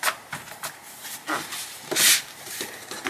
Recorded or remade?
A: recorded